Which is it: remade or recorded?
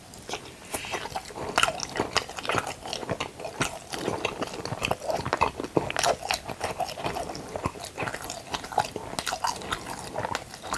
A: recorded